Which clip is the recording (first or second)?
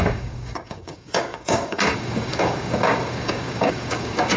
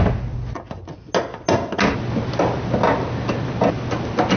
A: second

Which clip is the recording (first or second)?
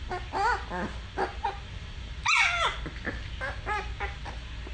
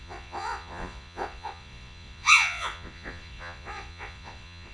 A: first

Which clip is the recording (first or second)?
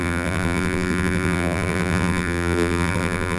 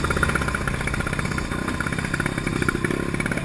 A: second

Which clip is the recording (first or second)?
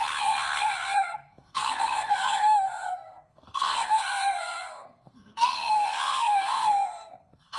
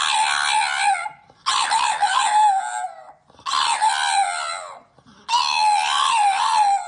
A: second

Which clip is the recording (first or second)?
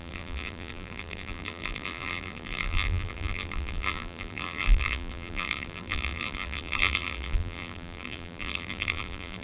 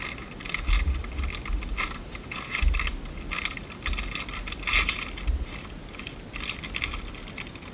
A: second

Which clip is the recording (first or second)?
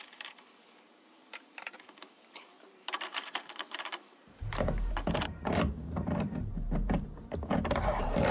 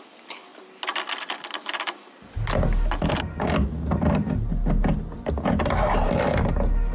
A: second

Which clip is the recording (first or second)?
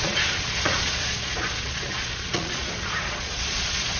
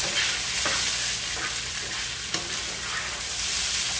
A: second